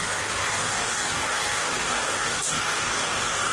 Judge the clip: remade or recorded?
remade